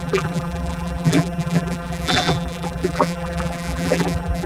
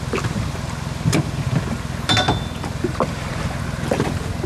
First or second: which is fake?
first